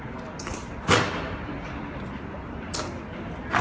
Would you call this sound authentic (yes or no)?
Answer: yes